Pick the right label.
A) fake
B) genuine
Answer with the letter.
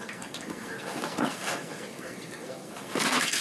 A